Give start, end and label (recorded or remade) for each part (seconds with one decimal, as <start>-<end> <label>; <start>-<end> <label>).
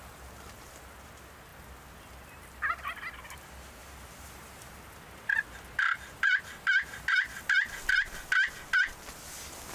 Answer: 0.0-3.8 recorded; 3.8-7.3 remade; 7.3-9.7 recorded